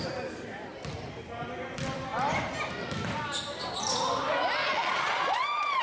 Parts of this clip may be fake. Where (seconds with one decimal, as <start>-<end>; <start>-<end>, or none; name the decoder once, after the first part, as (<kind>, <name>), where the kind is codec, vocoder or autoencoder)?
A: 4.6-5.8 (vocoder, Vocos)